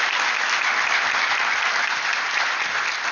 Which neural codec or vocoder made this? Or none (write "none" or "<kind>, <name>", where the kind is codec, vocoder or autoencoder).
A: none